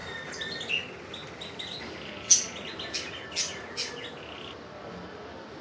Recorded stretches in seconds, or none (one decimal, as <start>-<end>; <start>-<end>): 0.0-5.6